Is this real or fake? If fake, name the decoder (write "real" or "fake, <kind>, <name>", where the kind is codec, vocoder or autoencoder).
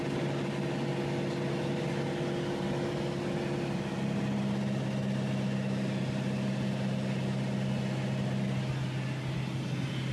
real